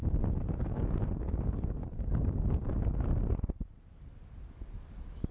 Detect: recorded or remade recorded